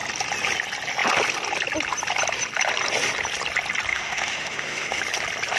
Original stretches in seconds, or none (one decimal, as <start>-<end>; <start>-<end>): 0.0-3.9; 5.0-5.6